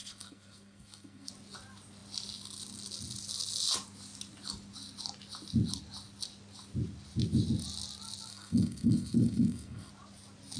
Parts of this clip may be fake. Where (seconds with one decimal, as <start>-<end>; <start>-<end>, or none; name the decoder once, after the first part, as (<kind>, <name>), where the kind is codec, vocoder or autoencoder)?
0.0-1.3 (codec, SNAC); 8.3-9.9